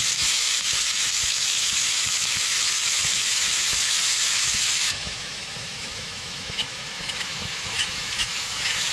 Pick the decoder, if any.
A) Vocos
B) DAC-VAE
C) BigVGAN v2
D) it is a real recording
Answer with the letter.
B